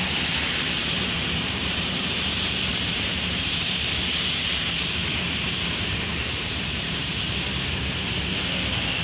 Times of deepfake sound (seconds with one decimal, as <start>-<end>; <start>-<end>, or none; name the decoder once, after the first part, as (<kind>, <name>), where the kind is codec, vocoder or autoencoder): 0.8-2.2 (vocoder, BigVGAN v2); 2.7-7.1